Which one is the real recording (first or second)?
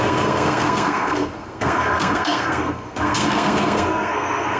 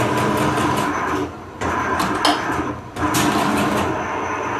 second